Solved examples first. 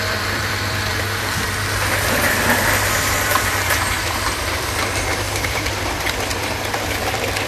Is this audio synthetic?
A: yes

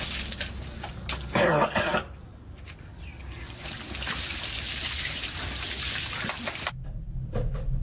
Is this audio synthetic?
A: no